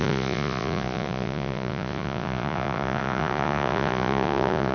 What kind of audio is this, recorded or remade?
remade